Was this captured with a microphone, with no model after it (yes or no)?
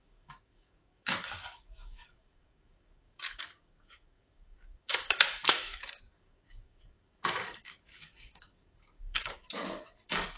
no